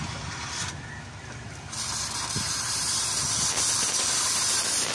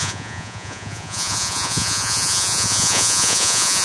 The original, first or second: first